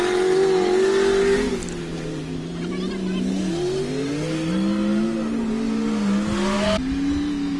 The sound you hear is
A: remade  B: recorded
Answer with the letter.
B